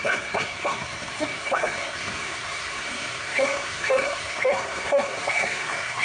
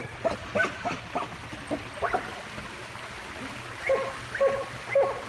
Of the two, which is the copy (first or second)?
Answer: first